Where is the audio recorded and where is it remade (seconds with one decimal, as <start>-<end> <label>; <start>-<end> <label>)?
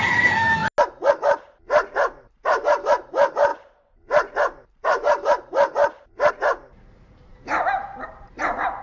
0.0-0.6 remade; 0.6-1.1 recorded; 1.1-7.3 remade; 7.3-8.1 recorded; 8.1-8.8 remade